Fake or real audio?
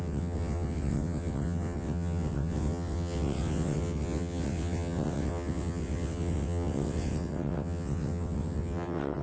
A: fake